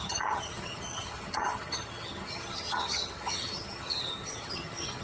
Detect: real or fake fake